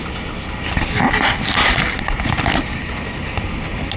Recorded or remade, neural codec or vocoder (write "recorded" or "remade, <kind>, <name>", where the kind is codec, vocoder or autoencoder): recorded